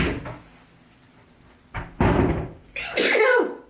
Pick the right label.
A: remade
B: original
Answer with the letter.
B